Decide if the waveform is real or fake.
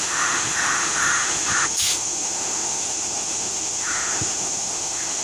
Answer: fake